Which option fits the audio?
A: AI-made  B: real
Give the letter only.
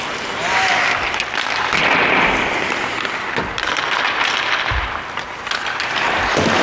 B